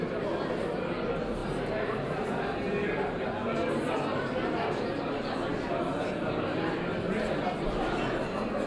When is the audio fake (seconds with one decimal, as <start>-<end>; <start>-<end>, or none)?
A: none